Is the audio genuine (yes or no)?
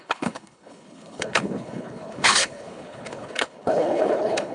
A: no